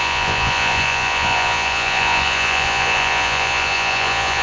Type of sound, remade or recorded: remade